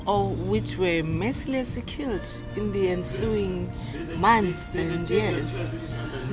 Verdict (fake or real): real